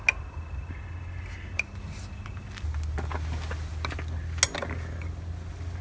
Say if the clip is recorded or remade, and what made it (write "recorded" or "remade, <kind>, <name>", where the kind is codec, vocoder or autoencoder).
recorded